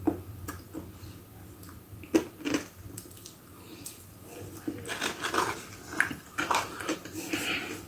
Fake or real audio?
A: real